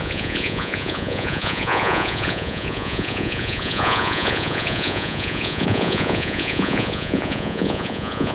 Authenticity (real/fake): fake